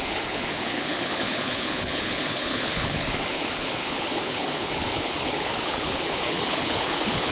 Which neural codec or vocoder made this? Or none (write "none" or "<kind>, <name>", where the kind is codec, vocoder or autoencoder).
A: codec, HILCodec